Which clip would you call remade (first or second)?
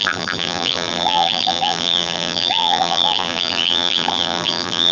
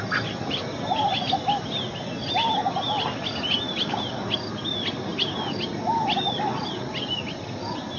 first